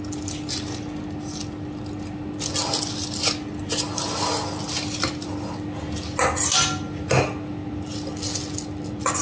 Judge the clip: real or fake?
real